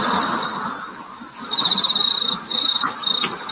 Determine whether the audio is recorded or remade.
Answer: remade